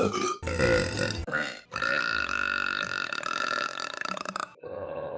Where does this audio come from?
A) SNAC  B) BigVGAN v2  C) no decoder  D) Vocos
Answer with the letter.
C